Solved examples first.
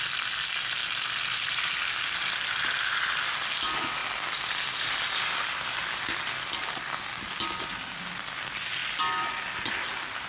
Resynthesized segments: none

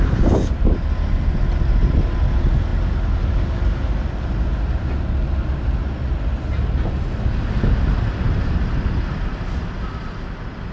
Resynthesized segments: none

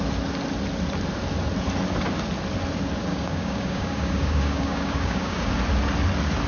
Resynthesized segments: 3.1-5.5

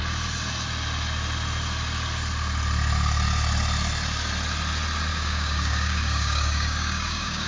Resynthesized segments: 5.1-7.5

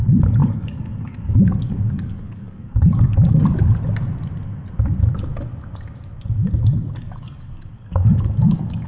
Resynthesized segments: 0.4-3.4; 7.0-8.9

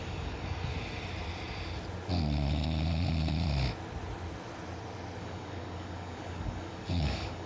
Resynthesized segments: 0.0-0.7; 5.2-7.5

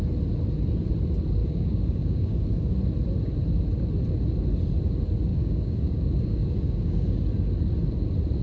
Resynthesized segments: 1.4-2.7; 5.3-7.1